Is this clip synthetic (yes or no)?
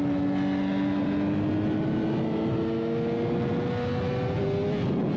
no